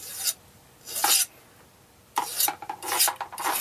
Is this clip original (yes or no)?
yes